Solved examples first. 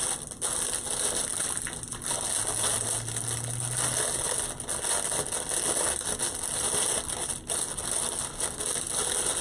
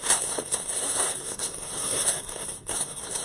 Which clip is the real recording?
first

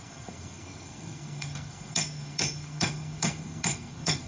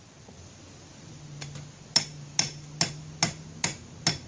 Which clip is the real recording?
second